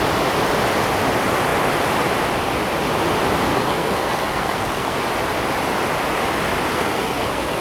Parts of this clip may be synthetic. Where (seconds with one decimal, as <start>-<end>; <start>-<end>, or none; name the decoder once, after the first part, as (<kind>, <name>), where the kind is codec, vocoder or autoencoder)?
3.5-5.0 (codec, SNAC); 6.7-7.6